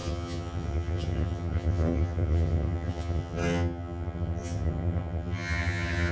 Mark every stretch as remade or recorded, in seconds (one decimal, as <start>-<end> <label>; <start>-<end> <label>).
0.0-6.1 remade

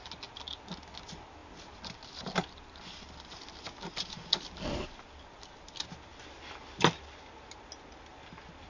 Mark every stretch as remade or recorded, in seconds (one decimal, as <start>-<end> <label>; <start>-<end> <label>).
0.0-8.7 recorded